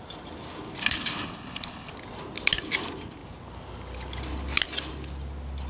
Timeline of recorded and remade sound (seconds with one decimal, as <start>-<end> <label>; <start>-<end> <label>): 0.0-0.8 recorded; 0.8-1.9 remade; 1.9-5.7 recorded